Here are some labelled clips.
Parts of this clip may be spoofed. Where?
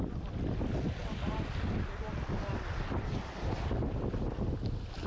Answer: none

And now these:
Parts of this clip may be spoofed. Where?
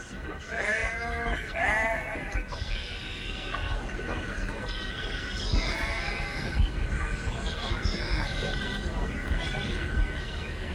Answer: 0.0-10.7 (codec, SNAC)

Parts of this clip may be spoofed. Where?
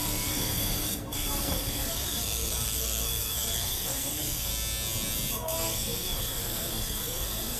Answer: 0.0-4.5 (codec, SNAC); 5.3-7.6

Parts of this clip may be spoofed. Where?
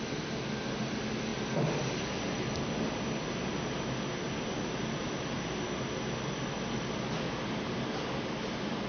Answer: none